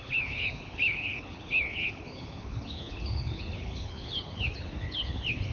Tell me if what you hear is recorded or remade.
remade